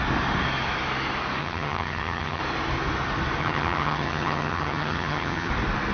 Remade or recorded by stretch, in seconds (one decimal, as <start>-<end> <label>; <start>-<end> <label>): 0.0-1.4 recorded; 1.4-2.4 remade; 2.4-3.4 recorded; 3.4-5.5 remade; 5.5-5.9 recorded